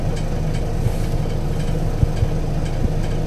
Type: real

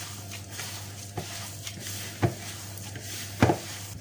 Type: real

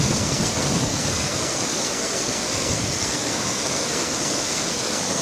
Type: fake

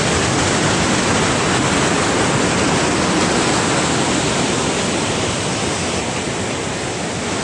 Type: real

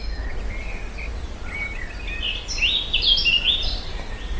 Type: real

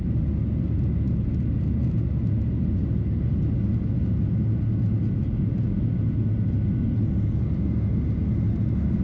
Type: real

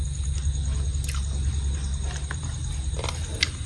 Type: real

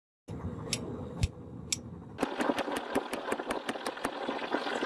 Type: real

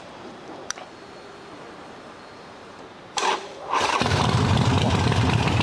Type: fake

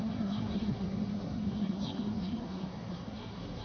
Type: fake